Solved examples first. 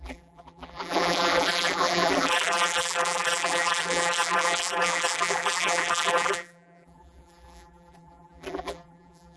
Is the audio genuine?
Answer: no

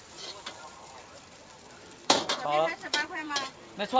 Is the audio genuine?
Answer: no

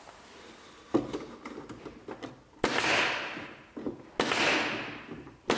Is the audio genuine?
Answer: yes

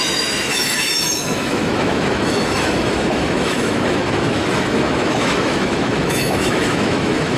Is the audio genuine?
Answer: no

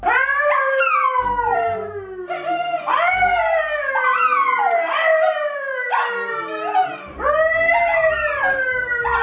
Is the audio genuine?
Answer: yes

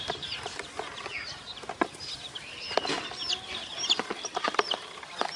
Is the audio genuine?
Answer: no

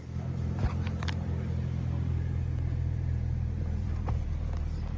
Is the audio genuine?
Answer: no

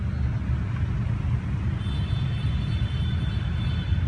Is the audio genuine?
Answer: yes